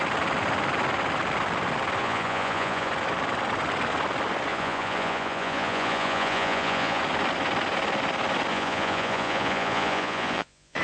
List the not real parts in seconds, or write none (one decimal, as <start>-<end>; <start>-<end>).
2.0-2.9; 4.5-7.0; 8.5-10.8